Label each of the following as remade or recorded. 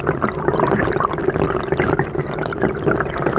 recorded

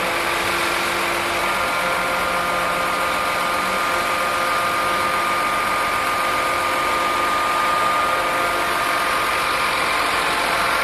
recorded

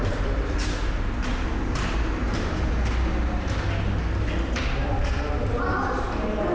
recorded